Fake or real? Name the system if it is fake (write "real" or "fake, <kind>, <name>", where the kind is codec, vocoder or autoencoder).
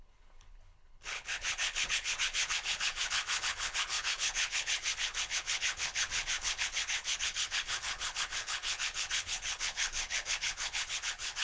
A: fake, codec, HILCodec